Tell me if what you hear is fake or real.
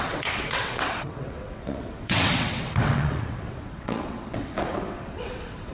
fake